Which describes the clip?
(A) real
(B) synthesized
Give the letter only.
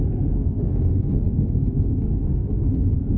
B